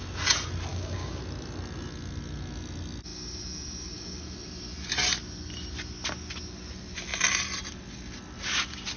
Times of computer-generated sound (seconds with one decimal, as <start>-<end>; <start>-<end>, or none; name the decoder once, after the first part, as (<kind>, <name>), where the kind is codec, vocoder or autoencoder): 0.7-1.2 (codec, DAC)